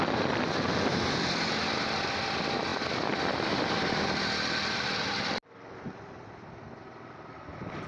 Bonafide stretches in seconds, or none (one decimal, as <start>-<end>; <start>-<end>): 0.0-7.9